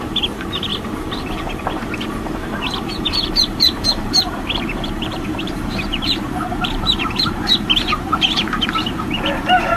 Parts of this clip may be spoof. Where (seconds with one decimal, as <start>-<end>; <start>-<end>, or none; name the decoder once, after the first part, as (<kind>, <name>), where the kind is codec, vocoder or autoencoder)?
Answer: 0.0-9.8 (vocoder, BigVGAN v2)